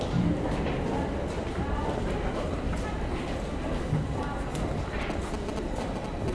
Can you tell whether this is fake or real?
real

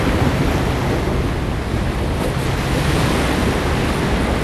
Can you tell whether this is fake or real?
real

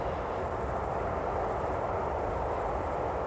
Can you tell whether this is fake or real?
real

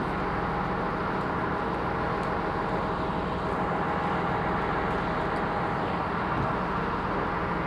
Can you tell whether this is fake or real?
real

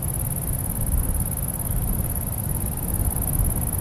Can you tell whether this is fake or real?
real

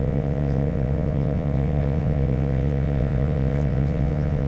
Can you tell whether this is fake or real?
fake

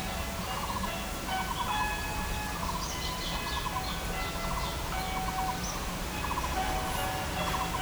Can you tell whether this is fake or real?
real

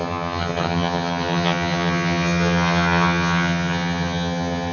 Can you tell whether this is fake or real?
fake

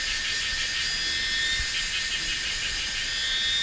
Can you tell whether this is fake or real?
real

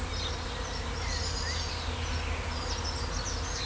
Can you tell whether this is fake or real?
real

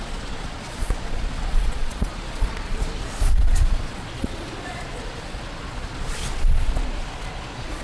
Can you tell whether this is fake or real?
fake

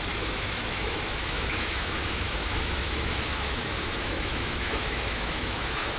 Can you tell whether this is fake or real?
fake